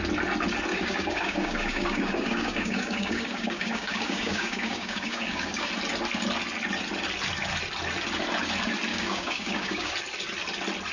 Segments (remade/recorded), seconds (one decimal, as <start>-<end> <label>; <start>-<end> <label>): 0.0-0.7 recorded; 0.7-5.7 remade; 5.7-8.9 recorded; 8.9-9.9 remade; 9.9-10.9 recorded